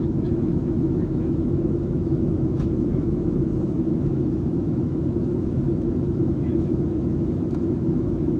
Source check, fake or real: fake